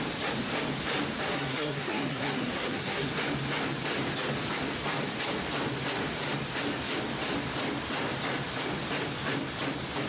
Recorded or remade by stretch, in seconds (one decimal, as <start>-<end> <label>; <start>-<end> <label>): 0.0-1.3 recorded; 1.3-3.1 remade; 3.1-10.1 recorded

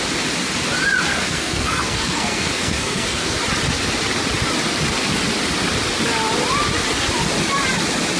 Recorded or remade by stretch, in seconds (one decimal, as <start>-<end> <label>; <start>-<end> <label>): 0.0-1.1 recorded; 1.1-3.4 remade; 3.4-8.2 recorded

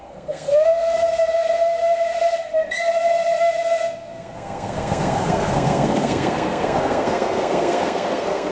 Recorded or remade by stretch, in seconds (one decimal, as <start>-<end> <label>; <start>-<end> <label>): 0.0-2.5 remade; 2.5-3.4 recorded; 3.4-8.5 remade

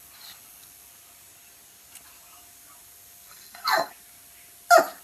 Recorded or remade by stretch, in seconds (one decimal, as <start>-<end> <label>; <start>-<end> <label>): 0.0-3.3 recorded; 3.3-3.9 remade; 3.9-5.0 recorded

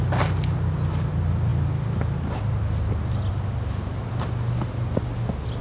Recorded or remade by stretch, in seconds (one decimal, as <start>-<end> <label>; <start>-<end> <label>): 0.0-5.6 recorded